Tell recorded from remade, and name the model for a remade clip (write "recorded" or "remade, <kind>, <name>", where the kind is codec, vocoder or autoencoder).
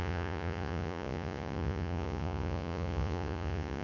remade, vocoder, Vocos